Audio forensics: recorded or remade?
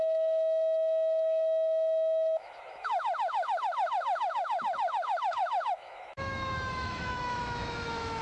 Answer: remade